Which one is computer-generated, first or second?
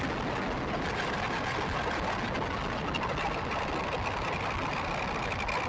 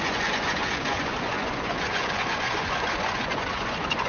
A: second